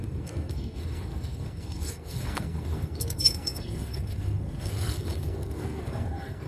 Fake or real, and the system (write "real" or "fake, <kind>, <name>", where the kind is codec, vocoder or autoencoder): fake, codec, SNAC